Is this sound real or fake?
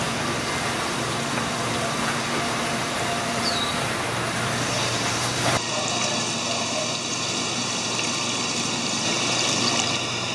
fake